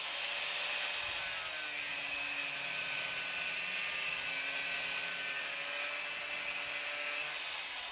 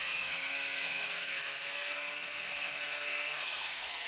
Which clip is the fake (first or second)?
second